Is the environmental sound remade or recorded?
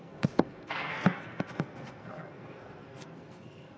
remade